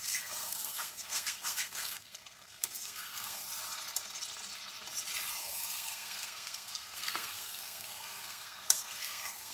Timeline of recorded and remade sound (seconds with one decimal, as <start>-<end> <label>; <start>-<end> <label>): 0.0-3.4 remade; 3.4-5.4 recorded; 5.4-9.5 remade